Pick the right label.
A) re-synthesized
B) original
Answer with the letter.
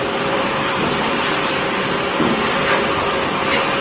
A